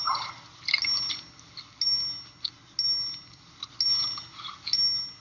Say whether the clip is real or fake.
real